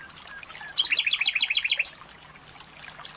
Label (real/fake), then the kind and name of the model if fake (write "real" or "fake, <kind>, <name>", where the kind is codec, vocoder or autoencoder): real